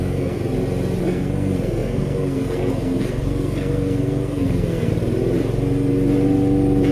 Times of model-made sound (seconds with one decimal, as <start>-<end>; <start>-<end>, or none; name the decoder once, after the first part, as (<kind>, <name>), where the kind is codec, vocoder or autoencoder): 0.0-0.4 (codec, SNAC); 1.0-4.9